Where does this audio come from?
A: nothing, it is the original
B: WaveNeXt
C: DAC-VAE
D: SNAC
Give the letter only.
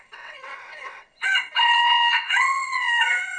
B